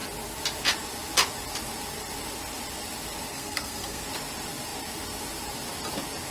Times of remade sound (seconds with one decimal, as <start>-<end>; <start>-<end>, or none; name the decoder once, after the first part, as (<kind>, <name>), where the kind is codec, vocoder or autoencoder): 3.3-4.0 (codec, SNAC)